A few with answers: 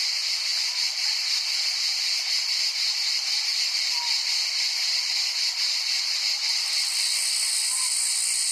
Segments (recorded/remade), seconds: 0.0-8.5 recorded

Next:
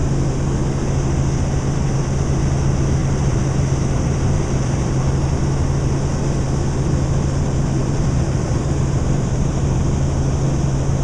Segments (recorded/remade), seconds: 0.0-3.0 recorded; 3.0-5.4 remade; 5.4-7.8 recorded; 7.8-9.8 remade; 9.8-11.0 recorded